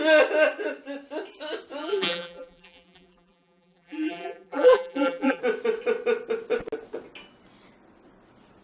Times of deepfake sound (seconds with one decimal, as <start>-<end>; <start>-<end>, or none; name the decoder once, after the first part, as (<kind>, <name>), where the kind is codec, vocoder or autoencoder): 1.8-5.4 (vocoder, BigVGAN v2)